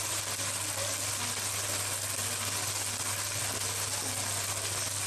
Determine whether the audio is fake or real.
real